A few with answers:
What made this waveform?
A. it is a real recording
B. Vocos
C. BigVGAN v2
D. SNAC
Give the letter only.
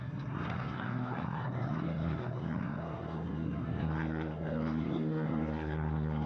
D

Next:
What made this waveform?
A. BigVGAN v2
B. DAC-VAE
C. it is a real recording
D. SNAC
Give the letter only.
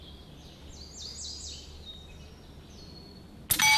C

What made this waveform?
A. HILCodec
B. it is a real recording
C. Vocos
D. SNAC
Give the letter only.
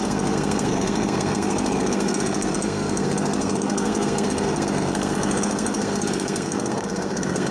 D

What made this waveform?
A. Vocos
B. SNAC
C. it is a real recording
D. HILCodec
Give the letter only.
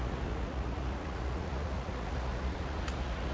A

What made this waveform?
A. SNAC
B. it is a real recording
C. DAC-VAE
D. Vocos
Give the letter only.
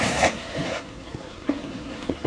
A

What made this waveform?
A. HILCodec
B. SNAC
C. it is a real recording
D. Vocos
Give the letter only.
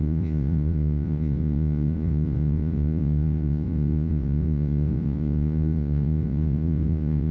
D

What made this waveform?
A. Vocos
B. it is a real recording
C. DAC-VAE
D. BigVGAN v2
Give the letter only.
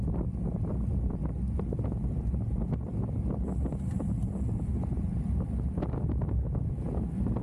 B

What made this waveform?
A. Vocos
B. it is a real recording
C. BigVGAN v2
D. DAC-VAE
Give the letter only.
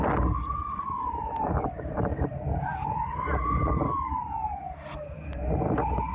B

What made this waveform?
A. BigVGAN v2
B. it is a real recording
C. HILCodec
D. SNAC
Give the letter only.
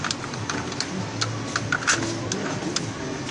B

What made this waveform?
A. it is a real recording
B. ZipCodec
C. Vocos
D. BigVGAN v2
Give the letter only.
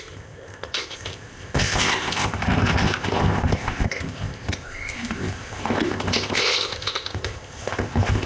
B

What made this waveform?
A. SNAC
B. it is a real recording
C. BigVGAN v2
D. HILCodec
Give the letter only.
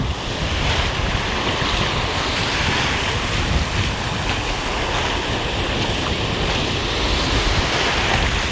B